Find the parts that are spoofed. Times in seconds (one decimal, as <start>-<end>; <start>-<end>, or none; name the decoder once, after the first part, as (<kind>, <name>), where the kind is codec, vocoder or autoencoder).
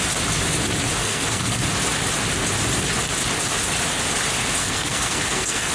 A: 1.0-1.6 (codec, SNAC); 4.6-5.7